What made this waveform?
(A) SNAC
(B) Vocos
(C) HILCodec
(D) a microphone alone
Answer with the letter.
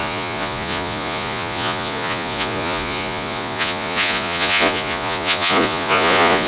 B